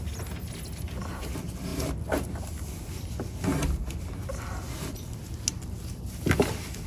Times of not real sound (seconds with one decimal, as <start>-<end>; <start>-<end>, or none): none